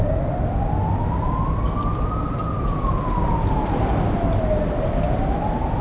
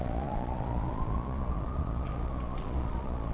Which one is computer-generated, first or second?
second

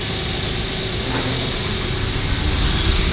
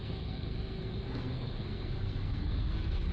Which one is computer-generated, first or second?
second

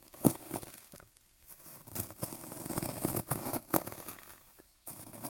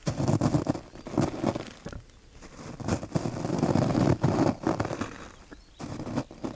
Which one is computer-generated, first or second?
first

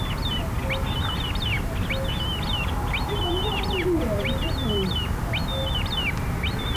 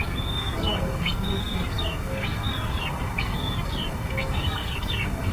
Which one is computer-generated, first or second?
second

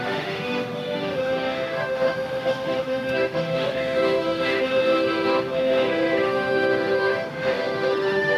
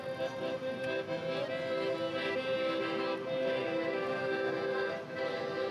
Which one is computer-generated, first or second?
first